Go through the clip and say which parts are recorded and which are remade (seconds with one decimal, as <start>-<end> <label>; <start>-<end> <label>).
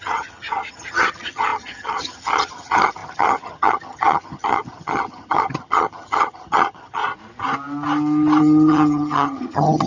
0.0-7.0 remade; 7.0-8.4 recorded; 8.4-9.9 remade